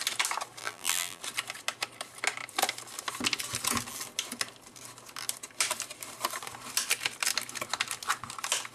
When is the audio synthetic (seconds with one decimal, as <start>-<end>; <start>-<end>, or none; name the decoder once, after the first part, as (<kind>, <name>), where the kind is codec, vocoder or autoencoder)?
0.6-1.2 (vocoder, BigVGAN v2)